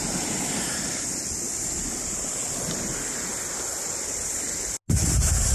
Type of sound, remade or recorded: recorded